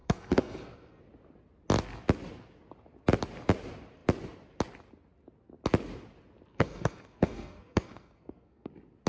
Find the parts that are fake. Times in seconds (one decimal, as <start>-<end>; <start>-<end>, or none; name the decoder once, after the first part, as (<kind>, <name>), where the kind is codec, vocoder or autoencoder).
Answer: 0.0-1.0 (codec, SNAC); 6.5-8.7